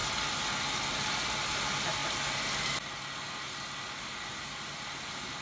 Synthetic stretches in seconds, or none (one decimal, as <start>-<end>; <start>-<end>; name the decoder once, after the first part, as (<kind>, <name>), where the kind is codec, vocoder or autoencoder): none